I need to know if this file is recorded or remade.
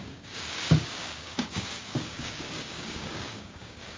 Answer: remade